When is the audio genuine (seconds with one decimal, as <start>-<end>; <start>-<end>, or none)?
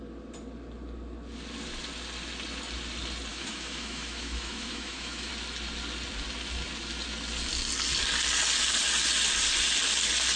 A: 0.0-3.3; 5.3-10.4